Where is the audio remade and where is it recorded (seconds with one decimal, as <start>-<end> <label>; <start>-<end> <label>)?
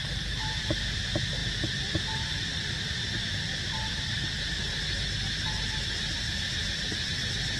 0.0-7.6 recorded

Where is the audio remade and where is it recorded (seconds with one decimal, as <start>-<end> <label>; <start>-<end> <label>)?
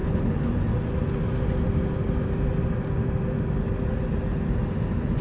0.0-0.5 remade; 0.5-5.2 recorded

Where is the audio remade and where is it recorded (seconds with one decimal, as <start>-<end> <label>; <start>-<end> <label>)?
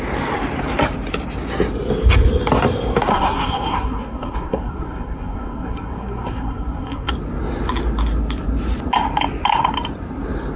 0.0-3.1 recorded; 3.1-7.1 remade; 7.1-10.6 recorded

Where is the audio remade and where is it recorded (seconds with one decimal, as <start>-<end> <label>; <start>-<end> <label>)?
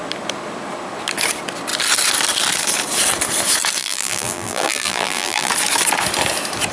0.0-3.8 recorded; 3.8-5.5 remade; 5.5-6.7 recorded